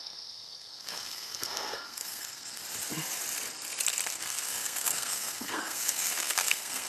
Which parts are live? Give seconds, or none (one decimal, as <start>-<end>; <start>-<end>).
2.6-4.1